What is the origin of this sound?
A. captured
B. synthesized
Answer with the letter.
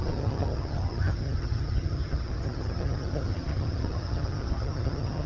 B